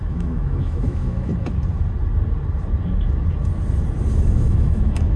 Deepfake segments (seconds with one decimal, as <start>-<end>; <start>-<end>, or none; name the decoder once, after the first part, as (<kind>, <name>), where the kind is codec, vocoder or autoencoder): 0.0-1.3 (autoencoder, DAC-VAE); 4.2-5.2

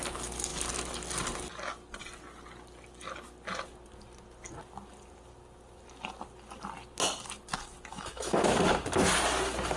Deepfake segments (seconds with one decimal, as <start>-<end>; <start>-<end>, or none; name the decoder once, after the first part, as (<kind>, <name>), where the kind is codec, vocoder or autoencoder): 7.9-8.4 (autoencoder, DAC-VAE)

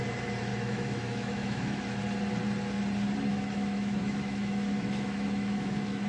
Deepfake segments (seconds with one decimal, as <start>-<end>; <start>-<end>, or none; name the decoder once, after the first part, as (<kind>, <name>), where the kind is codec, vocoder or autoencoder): 0.5-2.0 (autoencoder, DAC-VAE); 3.3-6.1

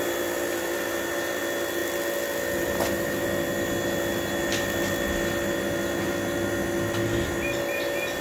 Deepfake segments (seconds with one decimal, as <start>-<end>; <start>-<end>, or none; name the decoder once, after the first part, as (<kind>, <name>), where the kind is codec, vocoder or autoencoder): none

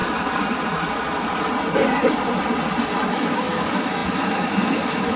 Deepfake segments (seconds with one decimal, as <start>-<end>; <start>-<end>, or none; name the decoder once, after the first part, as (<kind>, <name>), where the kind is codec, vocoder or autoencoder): 3.1-5.2 (autoencoder, DAC-VAE)

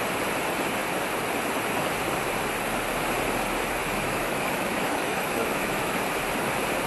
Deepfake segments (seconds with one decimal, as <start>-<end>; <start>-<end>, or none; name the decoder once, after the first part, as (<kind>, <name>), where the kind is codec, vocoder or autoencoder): 3.8-6.0 (autoencoder, DAC-VAE)

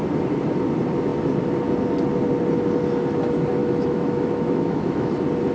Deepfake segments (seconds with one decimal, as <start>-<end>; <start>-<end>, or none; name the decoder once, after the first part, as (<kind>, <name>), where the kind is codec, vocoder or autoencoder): 3.6-5.1 (autoencoder, DAC-VAE)